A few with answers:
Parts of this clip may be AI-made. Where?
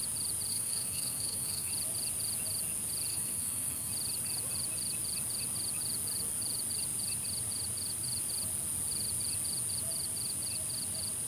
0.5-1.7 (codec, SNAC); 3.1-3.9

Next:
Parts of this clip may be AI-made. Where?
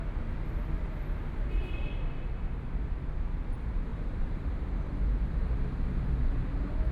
3.9-4.5 (vocoder, BigVGAN v2)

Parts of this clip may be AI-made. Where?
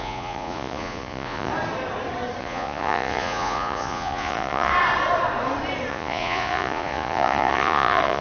0.0-1.5 (vocoder, Vocos); 2.4-4.7; 5.9-8.2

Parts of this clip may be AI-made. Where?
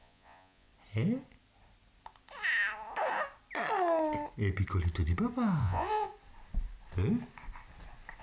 0.0-0.7 (vocoder, Vocos); 5.6-6.1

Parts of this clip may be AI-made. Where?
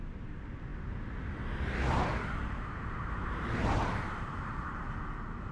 2.1-4.6 (vocoder, BigVGAN v2)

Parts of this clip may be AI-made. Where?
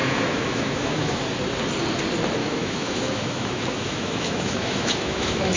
0.0-1.2 (autoencoder, DAC-VAE); 2.4-5.6